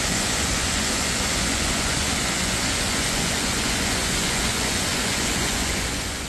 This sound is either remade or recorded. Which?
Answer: remade